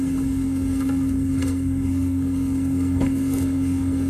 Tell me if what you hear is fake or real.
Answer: fake